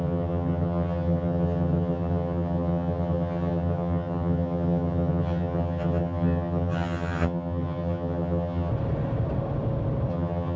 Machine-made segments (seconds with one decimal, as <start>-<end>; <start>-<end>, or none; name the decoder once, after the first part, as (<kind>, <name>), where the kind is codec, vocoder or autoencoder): 0.0-8.7 (vocoder, HiFi-GAN); 10.1-10.6